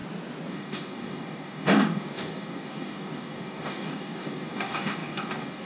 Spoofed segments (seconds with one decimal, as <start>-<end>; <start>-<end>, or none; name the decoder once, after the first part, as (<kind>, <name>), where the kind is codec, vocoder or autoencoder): 0.5-5.7 (codec, DAC)